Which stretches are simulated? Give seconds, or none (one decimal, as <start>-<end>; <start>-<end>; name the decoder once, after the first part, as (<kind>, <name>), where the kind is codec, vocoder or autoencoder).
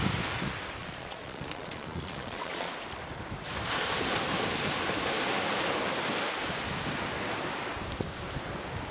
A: 0.8-2.7 (vocoder, Vocos)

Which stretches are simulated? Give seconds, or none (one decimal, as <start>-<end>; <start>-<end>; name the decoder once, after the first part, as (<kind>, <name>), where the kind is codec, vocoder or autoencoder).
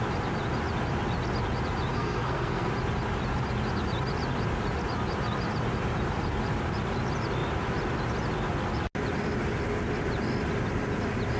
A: 1.9-2.7 (codec, SNAC)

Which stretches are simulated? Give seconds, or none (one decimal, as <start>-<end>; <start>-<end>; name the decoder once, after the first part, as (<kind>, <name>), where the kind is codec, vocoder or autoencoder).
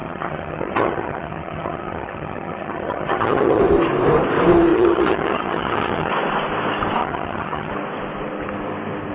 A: 0.0-3.6 (vocoder, HiFi-GAN); 4.7-6.1; 7.0-7.7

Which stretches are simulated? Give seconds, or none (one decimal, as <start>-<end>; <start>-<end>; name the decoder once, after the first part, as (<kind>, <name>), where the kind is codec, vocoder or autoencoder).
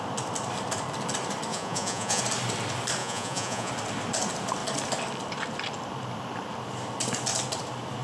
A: 1.5-2.2 (vocoder, Vocos); 3.0-3.7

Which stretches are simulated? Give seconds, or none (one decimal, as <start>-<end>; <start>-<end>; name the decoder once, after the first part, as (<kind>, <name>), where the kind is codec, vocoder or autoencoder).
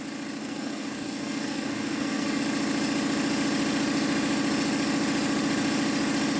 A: 0.4-2.4 (codec, SNAC)